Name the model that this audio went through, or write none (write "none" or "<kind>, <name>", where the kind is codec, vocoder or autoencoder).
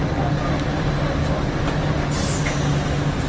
none